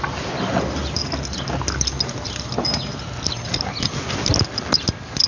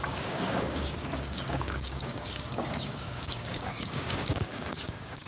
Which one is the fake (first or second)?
second